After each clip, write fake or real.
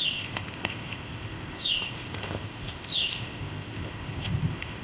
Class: fake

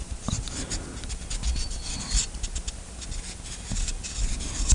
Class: real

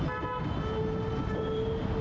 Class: real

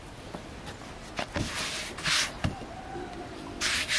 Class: real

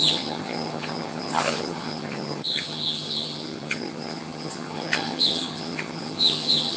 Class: fake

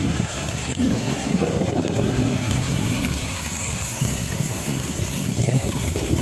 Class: fake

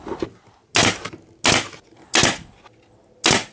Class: real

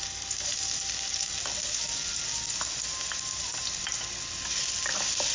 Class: real